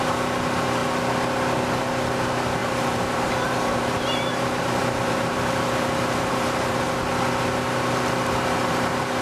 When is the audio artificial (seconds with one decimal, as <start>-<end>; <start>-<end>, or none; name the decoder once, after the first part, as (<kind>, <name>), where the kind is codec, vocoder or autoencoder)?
2.6-6.8 (vocoder, BigVGAN v2)